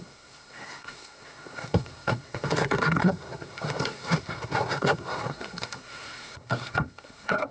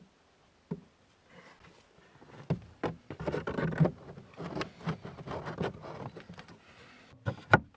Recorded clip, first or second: second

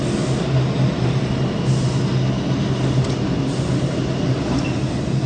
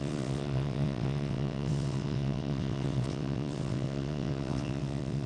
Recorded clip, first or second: first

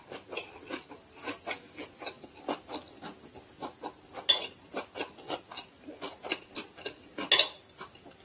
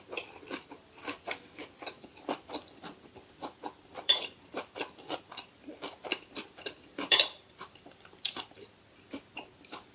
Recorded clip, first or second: first